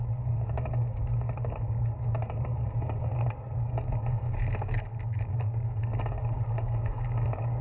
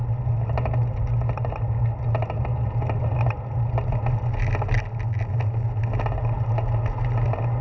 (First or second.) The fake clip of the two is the first